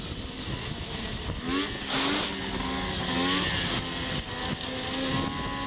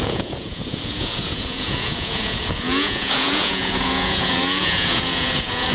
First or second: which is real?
first